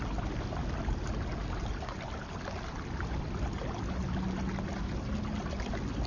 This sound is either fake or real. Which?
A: real